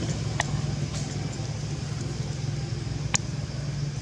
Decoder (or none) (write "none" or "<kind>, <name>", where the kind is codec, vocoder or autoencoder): none